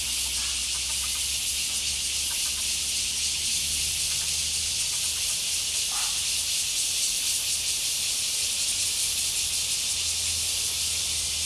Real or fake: real